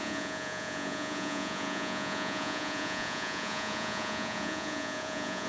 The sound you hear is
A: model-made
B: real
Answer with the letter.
A